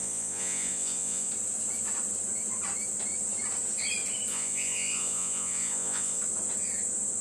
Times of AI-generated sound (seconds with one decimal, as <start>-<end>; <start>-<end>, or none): 0.0-1.3; 4.3-6.2